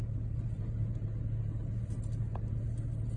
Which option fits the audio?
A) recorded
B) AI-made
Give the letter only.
A